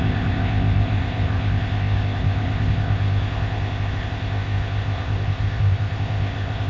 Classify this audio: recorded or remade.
remade